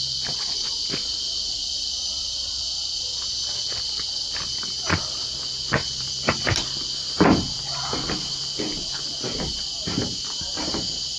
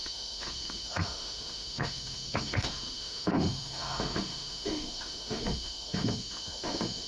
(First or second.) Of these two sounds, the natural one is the first